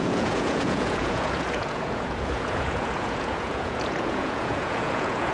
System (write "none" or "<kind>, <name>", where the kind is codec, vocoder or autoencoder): vocoder, Vocos